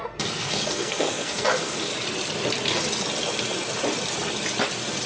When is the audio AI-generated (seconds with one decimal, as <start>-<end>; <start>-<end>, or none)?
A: 0.0-1.9